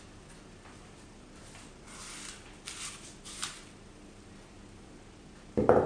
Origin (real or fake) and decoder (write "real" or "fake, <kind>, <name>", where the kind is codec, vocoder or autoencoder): real